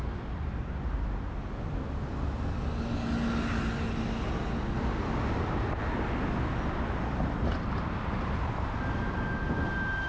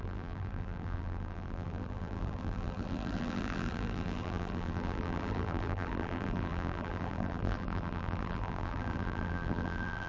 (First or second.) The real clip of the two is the first